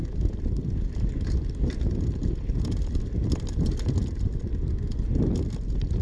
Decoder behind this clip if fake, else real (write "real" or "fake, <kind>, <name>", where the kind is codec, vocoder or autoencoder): real